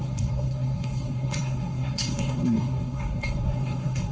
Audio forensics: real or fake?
fake